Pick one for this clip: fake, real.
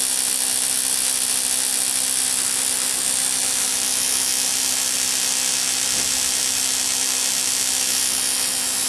real